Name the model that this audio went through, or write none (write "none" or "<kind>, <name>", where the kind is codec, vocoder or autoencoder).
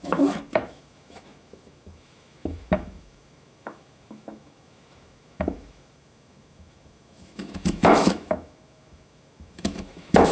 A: autoencoder, DAC-VAE